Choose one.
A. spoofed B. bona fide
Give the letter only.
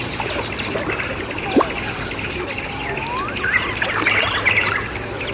B